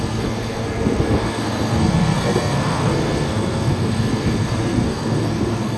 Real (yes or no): no